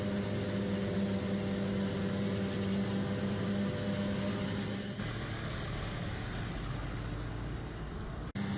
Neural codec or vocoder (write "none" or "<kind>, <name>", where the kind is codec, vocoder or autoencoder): none